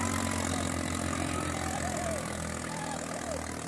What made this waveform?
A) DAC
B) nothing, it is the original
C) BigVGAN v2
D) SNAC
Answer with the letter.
B